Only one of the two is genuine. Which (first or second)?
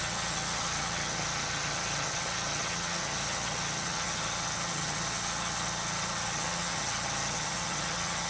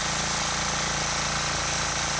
second